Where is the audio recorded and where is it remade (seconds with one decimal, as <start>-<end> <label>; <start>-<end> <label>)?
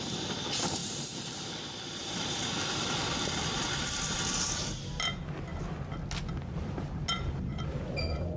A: 0.0-0.8 recorded; 0.8-1.4 remade; 1.4-2.0 recorded; 2.0-4.9 remade; 4.9-8.4 recorded